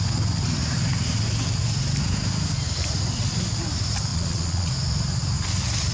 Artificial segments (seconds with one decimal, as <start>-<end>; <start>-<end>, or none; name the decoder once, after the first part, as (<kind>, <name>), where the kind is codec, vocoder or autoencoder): 4.1-4.7 (vocoder, Vocos)